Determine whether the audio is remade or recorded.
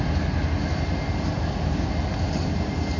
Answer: recorded